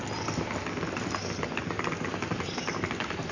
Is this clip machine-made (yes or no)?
no